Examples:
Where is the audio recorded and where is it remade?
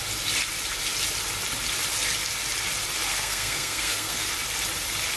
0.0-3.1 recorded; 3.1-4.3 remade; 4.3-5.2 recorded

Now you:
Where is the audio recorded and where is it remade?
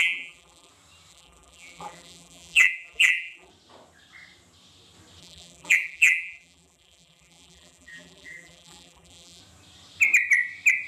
0.0-0.7 remade; 0.7-1.1 recorded; 1.1-3.5 remade; 3.5-5.2 recorded; 5.2-9.4 remade; 9.4-10.9 recorded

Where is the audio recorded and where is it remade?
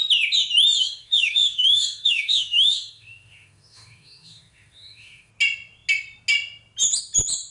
0.0-0.8 recorded; 0.8-5.3 remade; 5.3-7.5 recorded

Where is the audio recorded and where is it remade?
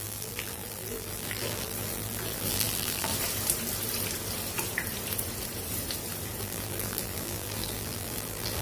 0.0-3.1 remade; 3.1-6.4 recorded; 6.4-8.6 remade